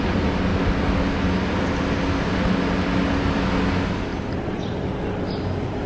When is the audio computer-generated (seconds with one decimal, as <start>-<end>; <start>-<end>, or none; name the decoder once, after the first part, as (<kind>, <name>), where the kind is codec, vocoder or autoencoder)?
none